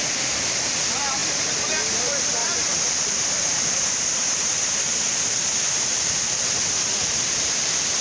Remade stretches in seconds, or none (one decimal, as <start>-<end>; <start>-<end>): 1.2-1.8; 2.4-4.7